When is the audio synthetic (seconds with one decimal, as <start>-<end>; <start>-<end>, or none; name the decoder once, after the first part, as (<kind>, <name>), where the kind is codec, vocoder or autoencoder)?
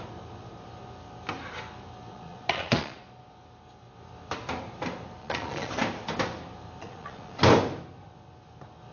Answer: 2.1-3.2 (vocoder, Vocos); 5.2-5.7; 6.8-7.4